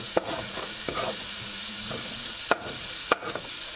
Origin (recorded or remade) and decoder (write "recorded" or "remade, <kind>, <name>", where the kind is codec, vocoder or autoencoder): remade, vocoder, Vocos